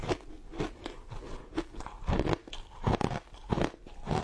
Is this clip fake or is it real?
real